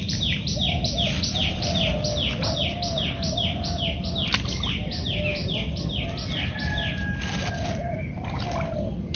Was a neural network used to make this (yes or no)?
no